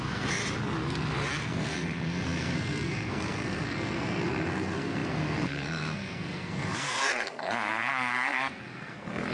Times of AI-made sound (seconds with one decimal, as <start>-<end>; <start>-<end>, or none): 0.0-0.4; 1.4-9.3